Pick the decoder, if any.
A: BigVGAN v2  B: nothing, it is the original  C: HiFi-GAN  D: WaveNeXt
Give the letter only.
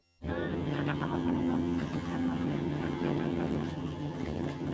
C